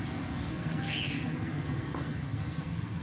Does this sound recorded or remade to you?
remade